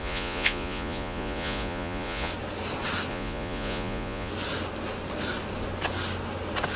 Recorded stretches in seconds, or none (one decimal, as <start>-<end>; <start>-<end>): 2.3-3.1; 4.3-6.8